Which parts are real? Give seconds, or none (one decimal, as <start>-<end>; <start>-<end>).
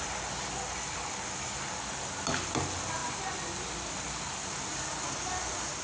0.0-5.8